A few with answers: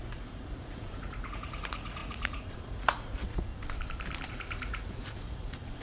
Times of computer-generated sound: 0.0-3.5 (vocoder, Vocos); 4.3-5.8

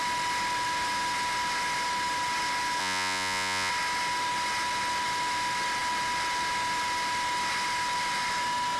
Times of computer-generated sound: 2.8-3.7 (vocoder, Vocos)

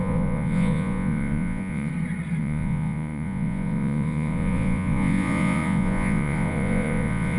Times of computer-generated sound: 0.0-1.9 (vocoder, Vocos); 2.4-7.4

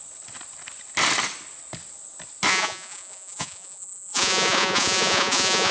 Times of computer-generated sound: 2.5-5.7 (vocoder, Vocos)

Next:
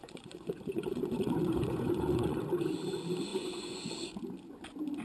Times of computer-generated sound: 0.0-2.4 (vocoder, Vocos); 3.3-3.9

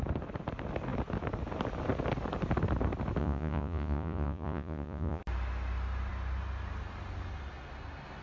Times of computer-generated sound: 3.2-5.2 (vocoder, Vocos)

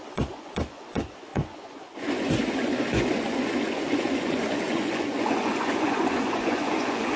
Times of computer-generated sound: 0.0-7.2 (vocoder, Vocos)